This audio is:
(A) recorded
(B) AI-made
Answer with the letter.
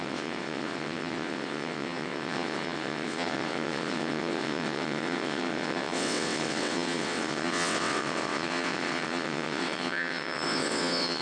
B